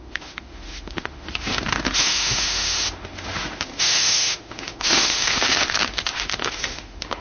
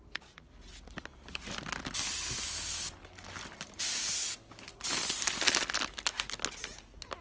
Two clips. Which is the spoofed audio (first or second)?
first